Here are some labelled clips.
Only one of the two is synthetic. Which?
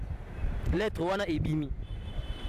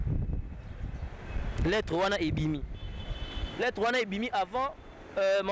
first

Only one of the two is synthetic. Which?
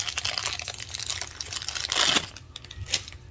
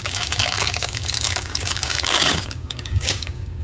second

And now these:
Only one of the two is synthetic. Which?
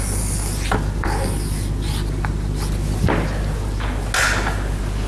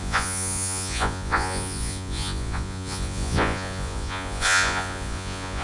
second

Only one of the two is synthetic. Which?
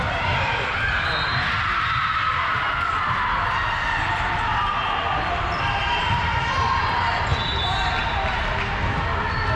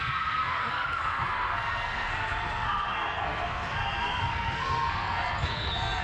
second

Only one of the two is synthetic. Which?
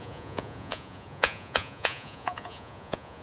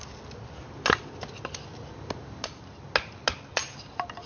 first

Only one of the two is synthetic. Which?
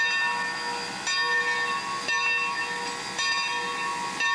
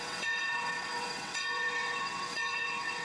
second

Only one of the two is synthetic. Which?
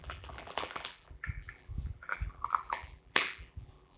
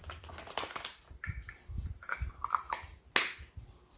first